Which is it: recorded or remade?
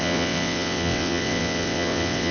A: remade